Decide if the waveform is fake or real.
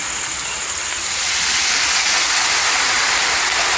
real